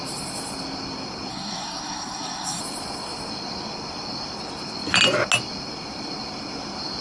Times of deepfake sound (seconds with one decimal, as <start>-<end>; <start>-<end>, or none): 1.3-2.6